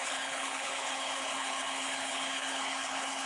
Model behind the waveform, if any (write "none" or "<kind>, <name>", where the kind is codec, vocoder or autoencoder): codec, HILCodec